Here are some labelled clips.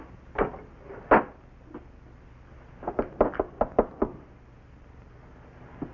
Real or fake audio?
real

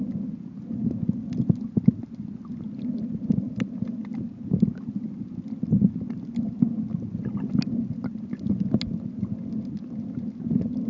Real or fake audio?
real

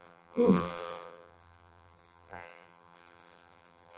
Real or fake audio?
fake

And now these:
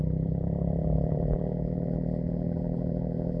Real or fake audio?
fake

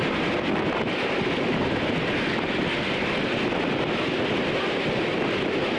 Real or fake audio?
real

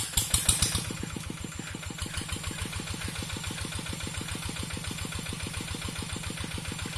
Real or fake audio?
real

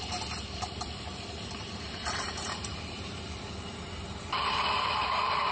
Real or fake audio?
fake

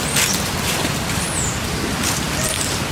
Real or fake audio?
fake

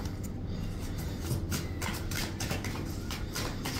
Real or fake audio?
real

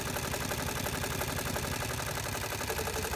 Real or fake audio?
real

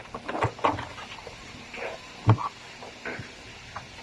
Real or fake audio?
fake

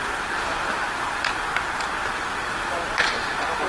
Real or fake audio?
real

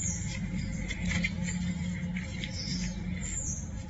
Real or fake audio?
real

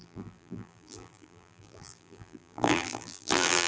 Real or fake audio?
fake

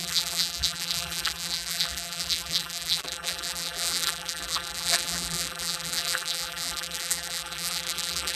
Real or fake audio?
fake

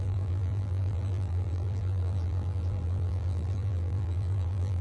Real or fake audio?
fake